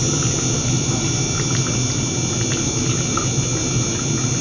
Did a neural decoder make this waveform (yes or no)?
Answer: no